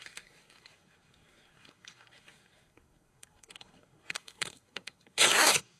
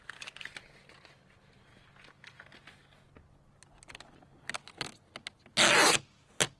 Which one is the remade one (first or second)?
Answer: first